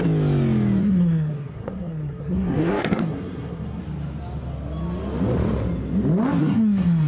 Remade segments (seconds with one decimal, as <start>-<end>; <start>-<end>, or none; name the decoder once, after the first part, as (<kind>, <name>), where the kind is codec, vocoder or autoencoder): 0.8-3.8 (codec, SNAC); 6.4-7.1